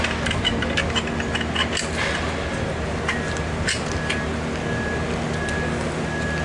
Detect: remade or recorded recorded